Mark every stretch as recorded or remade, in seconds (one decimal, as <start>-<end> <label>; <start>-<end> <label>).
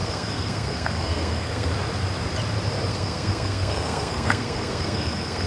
0.0-1.7 remade; 1.7-2.9 recorded; 2.9-5.5 remade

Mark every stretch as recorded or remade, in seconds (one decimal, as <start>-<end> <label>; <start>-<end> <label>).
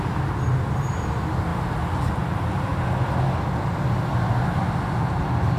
0.0-5.6 recorded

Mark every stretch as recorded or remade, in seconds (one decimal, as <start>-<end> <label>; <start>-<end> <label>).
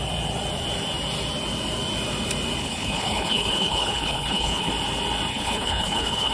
0.0-2.6 recorded; 2.6-4.7 remade; 4.7-5.3 recorded; 5.3-6.3 remade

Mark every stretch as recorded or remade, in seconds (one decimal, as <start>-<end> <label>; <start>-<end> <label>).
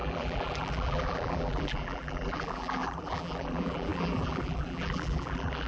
0.0-5.7 remade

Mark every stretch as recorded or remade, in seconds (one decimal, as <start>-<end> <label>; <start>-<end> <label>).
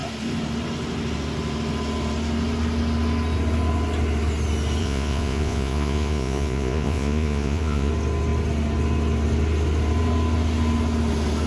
0.0-4.8 recorded; 4.8-7.9 remade; 7.9-11.5 recorded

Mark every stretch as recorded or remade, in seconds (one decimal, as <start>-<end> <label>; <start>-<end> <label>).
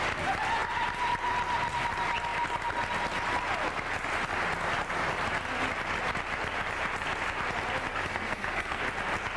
0.0-7.9 recorded; 7.9-8.8 remade; 8.8-9.4 recorded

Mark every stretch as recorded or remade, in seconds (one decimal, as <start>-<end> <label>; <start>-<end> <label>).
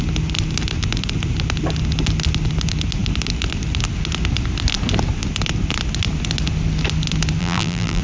0.0-7.4 recorded; 7.4-8.0 remade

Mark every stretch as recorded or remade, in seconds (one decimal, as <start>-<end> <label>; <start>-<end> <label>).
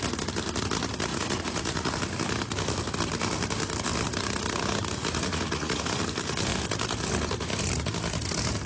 0.0-1.1 recorded; 1.1-1.9 remade; 1.9-5.0 recorded; 5.0-6.0 remade; 6.0-8.7 recorded